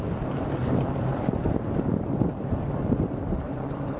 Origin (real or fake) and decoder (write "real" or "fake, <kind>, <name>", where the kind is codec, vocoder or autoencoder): fake, vocoder, BigVGAN v2